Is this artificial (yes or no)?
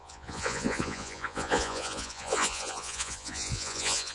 yes